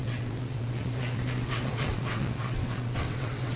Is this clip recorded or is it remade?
remade